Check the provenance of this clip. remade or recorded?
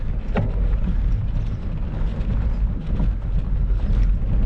recorded